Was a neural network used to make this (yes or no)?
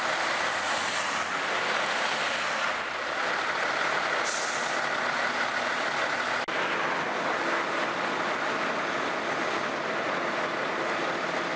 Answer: no